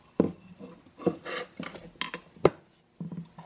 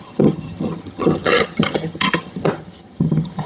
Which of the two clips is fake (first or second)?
second